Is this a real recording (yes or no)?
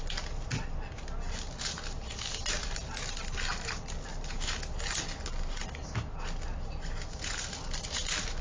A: yes